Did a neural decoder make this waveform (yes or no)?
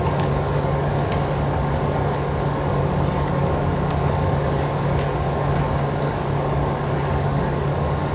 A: yes